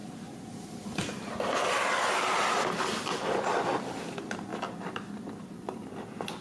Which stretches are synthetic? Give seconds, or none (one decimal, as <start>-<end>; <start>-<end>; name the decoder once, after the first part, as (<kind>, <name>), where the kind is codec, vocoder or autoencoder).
none